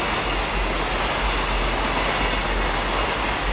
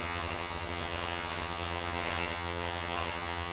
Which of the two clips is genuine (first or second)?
first